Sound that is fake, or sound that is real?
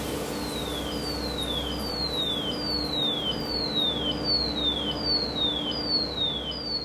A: real